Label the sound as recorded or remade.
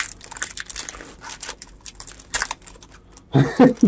remade